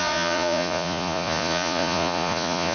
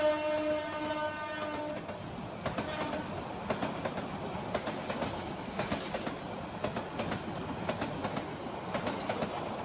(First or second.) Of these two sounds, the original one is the second